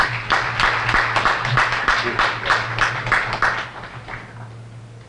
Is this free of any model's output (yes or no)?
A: yes